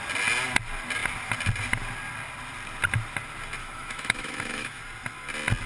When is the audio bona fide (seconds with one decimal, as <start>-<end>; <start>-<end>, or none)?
0.0-3.6; 4.8-5.7